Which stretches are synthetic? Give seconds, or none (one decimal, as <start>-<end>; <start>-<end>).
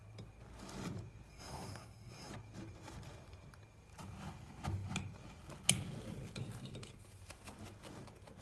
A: 1.3-2.3